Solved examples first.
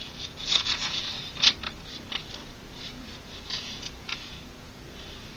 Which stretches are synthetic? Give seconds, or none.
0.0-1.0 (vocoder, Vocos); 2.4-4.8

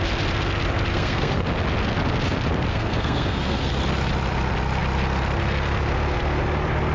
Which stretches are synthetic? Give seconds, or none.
0.9-1.4 (codec, SNAC); 2.7-3.7

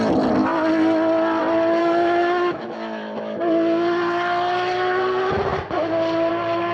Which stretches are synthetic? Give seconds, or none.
1.8-3.4 (autoencoder, DAC-VAE)

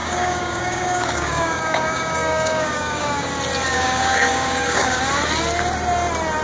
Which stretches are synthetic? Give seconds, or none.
0.0-3.3 (codec, DAC); 3.7-5.0

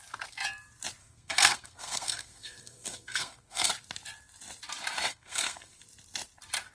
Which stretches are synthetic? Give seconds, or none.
1.0-3.7 (codec, SNAC); 5.1-5.8

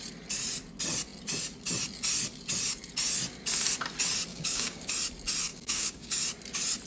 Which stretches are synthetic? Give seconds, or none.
4.3-4.9 (codec, DAC); 5.5-6.2